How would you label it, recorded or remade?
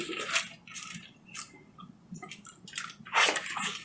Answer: recorded